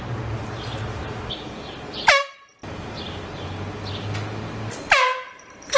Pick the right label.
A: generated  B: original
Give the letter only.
B